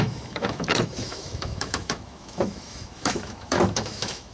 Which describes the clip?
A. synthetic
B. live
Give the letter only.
A